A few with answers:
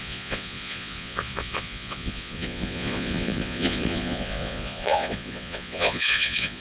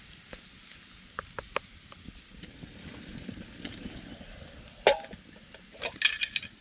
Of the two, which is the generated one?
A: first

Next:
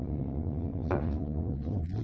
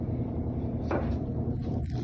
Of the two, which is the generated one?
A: first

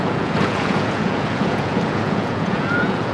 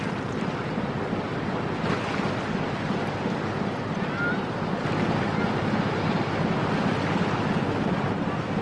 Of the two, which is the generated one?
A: first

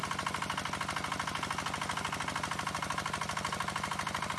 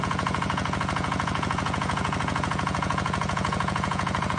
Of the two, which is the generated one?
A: second